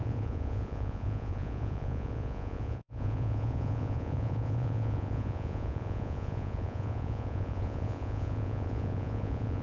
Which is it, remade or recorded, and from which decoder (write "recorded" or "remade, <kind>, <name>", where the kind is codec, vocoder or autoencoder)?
remade, vocoder, Vocos